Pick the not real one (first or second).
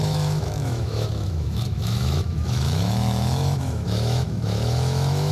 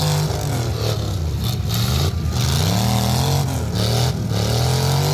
first